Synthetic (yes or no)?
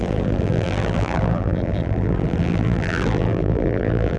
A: yes